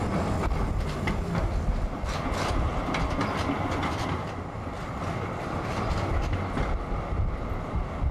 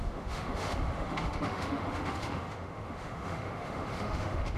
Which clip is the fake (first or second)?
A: second